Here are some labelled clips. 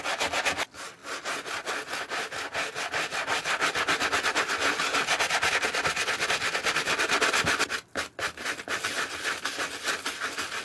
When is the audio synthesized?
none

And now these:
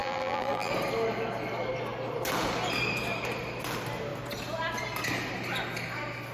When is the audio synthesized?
0.0-0.7 (vocoder, BigVGAN v2)

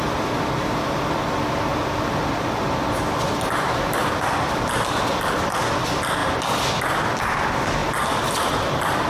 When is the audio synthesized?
0.0-1.7 (vocoder, BigVGAN v2); 5.8-6.2; 6.8-9.1